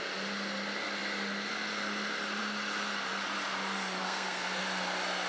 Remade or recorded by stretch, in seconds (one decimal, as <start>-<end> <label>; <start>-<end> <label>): 0.0-4.0 recorded; 4.0-4.6 remade; 4.6-5.3 recorded

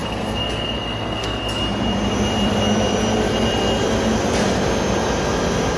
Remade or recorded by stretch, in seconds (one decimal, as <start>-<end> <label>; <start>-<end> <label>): 0.0-1.6 remade; 1.6-5.8 recorded